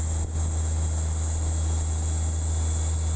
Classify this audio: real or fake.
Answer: real